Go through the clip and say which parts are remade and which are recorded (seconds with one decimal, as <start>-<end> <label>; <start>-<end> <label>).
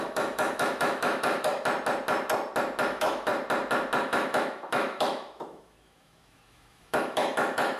0.0-1.5 remade; 1.5-2.9 recorded; 2.9-3.3 remade; 3.3-4.0 recorded; 4.0-7.8 remade